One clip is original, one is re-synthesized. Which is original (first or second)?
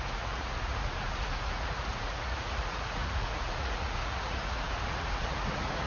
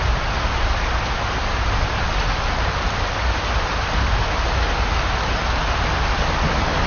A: second